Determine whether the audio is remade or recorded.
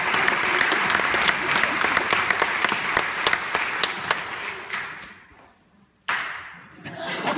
recorded